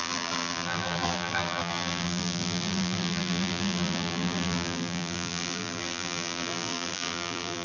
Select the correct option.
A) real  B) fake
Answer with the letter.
B